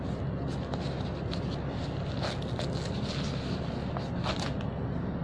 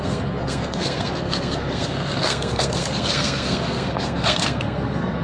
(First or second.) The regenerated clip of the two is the second